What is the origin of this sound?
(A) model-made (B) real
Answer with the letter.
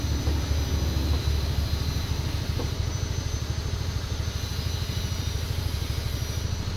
B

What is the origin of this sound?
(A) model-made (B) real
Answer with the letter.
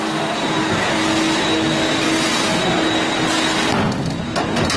B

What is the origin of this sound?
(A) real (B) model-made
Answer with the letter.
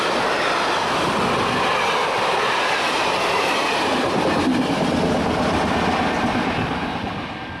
A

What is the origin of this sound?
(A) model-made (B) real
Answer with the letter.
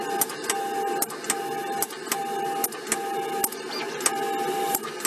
B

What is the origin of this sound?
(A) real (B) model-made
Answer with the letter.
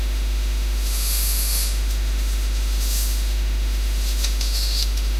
B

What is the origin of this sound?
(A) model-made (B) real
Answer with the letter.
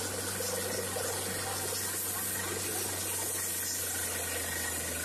B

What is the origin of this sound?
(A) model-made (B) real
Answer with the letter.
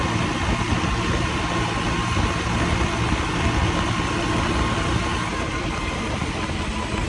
B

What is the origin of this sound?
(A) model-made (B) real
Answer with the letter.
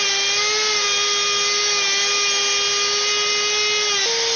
B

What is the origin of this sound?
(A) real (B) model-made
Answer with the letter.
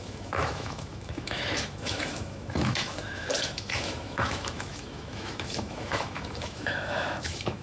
B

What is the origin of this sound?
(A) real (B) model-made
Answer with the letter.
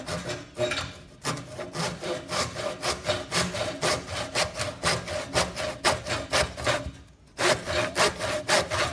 A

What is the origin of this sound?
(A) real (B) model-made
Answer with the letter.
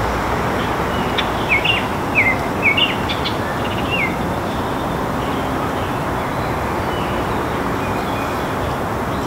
A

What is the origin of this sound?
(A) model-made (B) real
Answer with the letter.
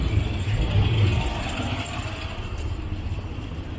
B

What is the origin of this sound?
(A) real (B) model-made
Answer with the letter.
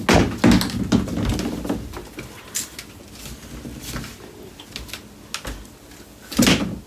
A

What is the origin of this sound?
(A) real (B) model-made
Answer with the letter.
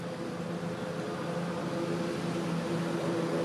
A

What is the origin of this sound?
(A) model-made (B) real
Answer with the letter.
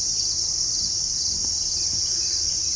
B